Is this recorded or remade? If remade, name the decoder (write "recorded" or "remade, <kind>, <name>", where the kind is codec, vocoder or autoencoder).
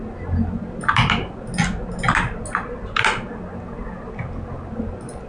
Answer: recorded